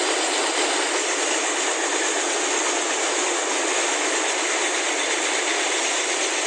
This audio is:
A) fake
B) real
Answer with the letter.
B